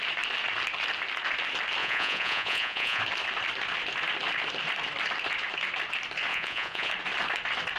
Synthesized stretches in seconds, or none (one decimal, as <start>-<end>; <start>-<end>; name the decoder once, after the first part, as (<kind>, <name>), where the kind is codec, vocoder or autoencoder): 1.8-3.0 (vocoder, Vocos); 6.3-6.9